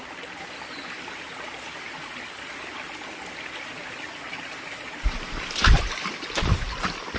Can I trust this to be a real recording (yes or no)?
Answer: yes